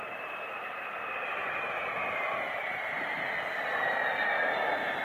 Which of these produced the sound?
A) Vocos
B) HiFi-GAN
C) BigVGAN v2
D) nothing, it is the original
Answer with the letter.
C